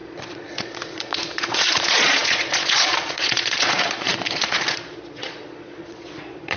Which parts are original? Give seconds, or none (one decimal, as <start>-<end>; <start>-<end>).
none